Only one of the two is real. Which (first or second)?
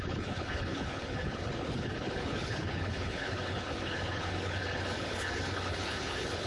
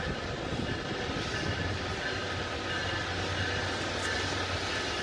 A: second